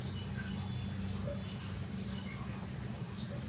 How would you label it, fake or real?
real